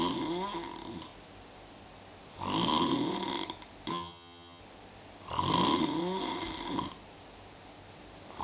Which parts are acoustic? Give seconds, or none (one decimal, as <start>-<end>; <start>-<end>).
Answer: 0.0-3.9; 4.6-8.4